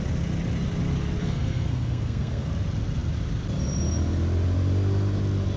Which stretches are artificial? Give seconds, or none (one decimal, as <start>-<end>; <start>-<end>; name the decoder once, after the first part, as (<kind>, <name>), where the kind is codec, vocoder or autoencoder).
1.2-2.5 (codec, SNAC)